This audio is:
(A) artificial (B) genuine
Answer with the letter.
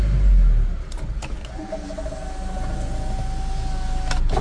B